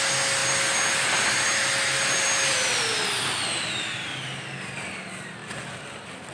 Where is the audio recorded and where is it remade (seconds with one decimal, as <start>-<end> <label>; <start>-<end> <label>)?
0.0-6.3 recorded